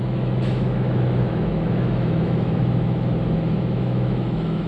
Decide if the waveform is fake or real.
fake